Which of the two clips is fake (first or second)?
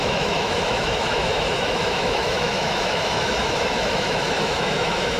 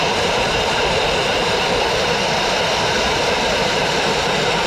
first